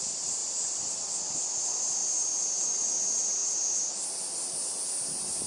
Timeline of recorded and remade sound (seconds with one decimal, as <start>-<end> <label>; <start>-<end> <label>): 0.0-5.5 recorded